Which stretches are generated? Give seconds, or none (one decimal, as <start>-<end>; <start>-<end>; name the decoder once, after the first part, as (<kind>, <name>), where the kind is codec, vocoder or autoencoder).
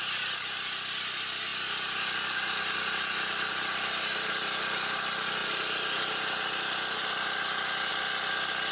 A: 0.0-7.9 (vocoder, BigVGAN v2)